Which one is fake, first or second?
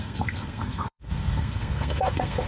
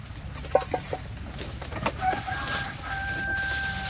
first